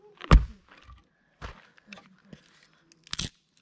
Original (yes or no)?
yes